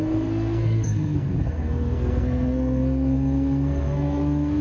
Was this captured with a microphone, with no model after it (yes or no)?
no